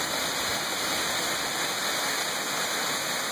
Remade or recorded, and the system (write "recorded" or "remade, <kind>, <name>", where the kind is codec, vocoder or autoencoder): recorded